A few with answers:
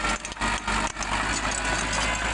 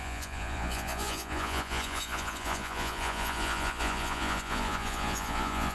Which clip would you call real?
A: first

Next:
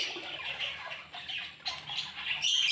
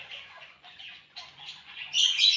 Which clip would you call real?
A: first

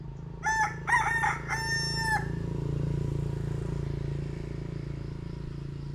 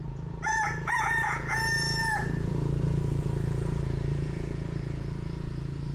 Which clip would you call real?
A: first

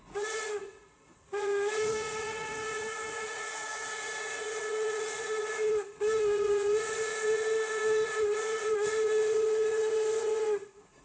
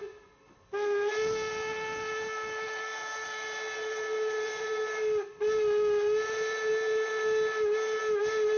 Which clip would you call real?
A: second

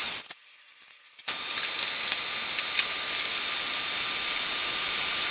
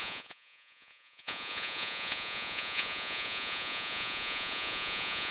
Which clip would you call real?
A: first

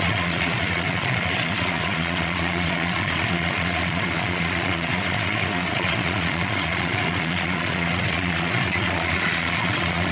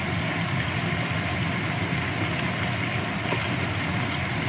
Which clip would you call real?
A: second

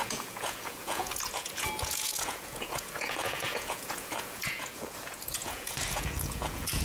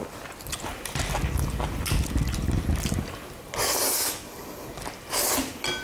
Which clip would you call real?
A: second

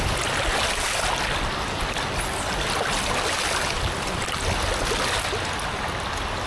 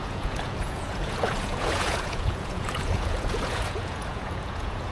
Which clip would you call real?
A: first